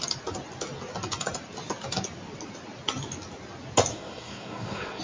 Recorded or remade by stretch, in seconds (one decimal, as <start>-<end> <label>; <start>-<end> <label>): 0.0-3.9 recorded; 3.9-5.0 remade